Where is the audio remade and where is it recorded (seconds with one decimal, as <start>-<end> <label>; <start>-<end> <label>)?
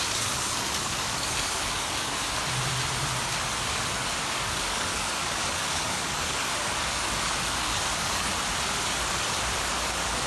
0.0-2.2 remade; 2.2-3.7 recorded; 3.7-8.3 remade; 8.3-9.6 recorded; 9.6-10.3 remade